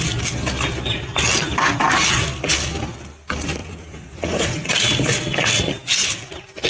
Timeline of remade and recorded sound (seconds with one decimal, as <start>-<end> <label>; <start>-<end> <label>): 0.0-3.6 recorded; 3.6-4.7 remade; 4.7-6.7 recorded